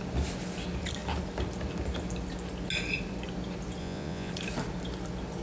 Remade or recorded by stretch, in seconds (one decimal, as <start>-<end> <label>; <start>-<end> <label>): 0.0-3.8 recorded; 3.8-4.3 remade; 4.3-5.4 recorded

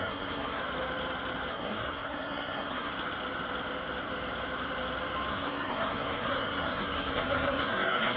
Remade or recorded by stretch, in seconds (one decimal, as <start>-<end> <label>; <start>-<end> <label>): 0.0-0.6 remade; 0.6-1.5 recorded; 1.5-2.9 remade; 2.9-5.3 recorded; 5.3-8.2 remade

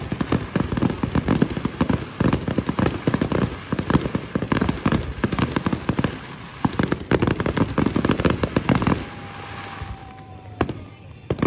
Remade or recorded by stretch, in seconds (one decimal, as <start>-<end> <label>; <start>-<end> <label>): 0.0-6.5 recorded; 6.5-8.2 remade; 8.2-10.0 recorded; 10.0-11.5 remade

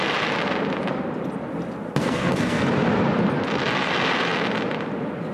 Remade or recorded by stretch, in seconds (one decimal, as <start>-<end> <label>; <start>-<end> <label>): 0.0-2.0 recorded; 2.0-2.7 remade; 2.7-5.3 recorded

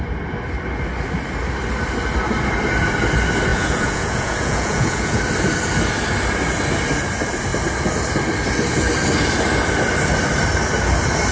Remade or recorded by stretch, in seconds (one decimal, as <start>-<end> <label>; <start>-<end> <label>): 0.0-3.5 recorded; 3.5-5.2 remade; 5.2-11.3 recorded

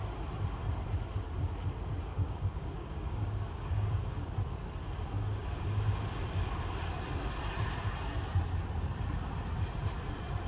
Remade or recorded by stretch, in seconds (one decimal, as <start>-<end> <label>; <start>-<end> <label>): 0.0-2.1 recorded; 2.1-4.3 remade; 4.3-10.5 recorded

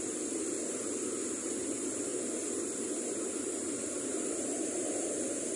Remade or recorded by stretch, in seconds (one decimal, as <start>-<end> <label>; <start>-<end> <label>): 0.0-5.6 recorded

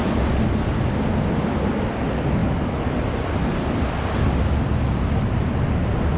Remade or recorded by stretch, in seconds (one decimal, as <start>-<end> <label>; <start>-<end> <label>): 0.0-6.2 recorded